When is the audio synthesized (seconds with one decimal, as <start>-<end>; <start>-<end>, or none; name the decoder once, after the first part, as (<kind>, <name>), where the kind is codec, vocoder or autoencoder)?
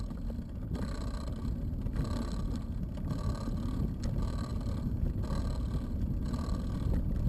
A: none